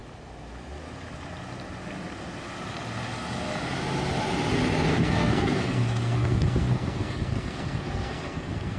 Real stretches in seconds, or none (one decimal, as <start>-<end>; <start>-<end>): 0.0-4.9